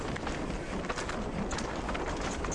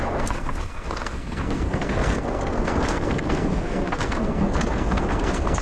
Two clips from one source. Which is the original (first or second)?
first